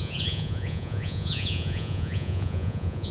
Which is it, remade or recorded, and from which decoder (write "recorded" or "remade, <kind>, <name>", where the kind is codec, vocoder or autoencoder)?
remade, vocoder, Vocos